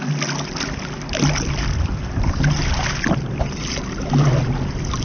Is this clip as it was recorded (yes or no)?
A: yes